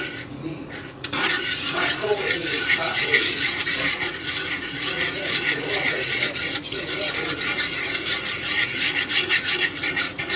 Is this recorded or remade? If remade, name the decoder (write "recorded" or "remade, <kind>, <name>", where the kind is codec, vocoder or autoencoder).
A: remade, vocoder, Vocos